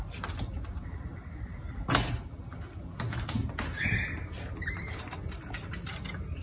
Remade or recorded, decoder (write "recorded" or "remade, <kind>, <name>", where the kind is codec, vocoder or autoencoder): recorded